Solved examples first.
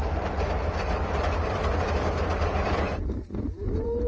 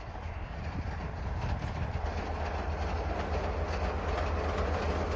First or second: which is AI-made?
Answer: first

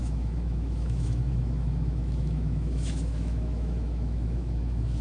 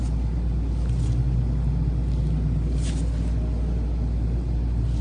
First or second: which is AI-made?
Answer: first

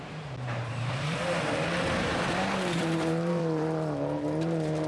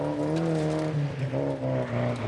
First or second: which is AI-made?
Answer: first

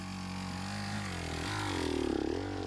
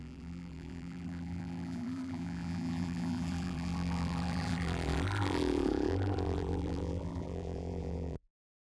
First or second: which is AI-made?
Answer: second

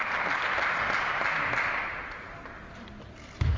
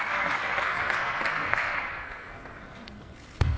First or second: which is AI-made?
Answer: second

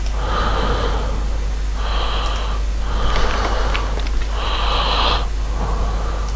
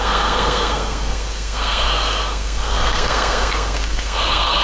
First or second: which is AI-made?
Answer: second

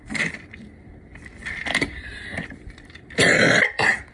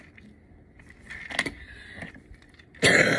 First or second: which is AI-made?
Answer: first